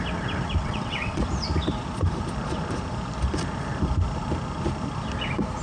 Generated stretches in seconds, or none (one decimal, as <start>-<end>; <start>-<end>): 0.6-1.2